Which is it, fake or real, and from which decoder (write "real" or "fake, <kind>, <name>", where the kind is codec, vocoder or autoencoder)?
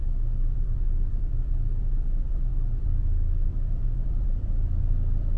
fake, vocoder, BigVGAN v2